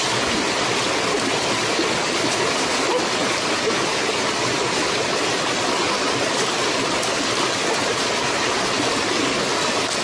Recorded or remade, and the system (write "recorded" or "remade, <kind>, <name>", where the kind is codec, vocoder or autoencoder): recorded